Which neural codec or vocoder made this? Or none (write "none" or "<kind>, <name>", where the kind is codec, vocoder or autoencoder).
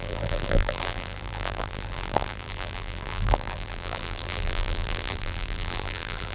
vocoder, BigVGAN v2